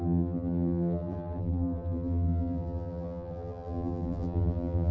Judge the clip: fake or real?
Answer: fake